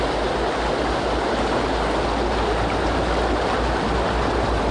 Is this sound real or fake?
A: real